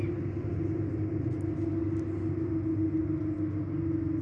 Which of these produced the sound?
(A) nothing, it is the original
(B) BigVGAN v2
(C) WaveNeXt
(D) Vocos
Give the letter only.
A